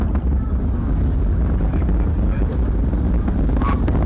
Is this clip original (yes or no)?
yes